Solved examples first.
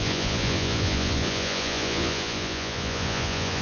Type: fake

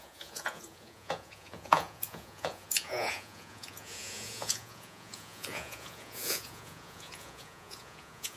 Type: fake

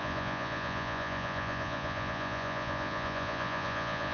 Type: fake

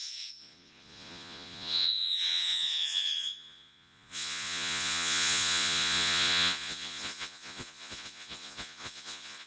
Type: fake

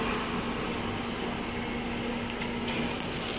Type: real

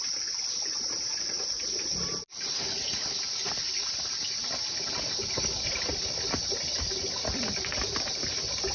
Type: real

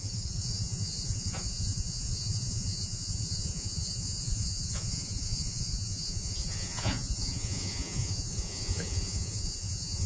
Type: fake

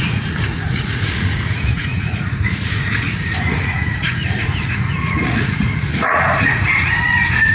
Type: fake